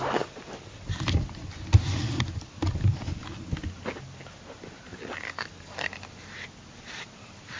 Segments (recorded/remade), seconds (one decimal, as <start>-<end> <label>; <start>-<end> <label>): 0.0-7.6 recorded